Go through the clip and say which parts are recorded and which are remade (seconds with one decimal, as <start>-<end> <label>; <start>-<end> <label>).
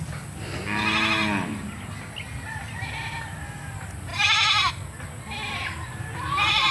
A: 0.0-6.7 recorded